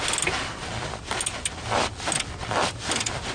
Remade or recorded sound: recorded